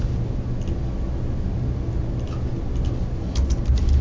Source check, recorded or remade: recorded